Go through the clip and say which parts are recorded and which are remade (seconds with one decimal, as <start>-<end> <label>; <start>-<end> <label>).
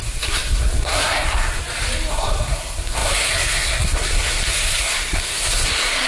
0.0-1.6 remade; 1.6-2.1 recorded; 2.1-6.1 remade